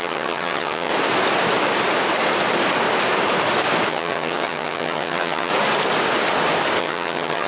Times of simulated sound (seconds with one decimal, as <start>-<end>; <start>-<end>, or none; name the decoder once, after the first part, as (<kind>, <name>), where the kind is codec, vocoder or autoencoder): 0.0-0.9 (vocoder, HiFi-GAN); 3.9-5.5; 6.8-7.5